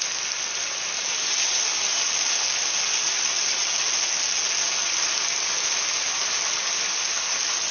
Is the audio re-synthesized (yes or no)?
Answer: no